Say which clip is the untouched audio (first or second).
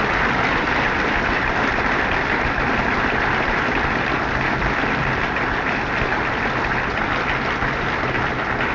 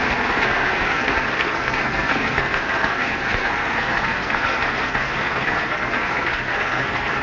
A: first